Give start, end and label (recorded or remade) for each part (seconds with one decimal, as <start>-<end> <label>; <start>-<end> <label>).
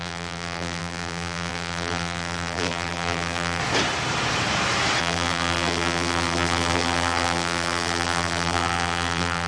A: 0.0-3.6 remade; 3.6-5.0 recorded; 5.0-9.5 remade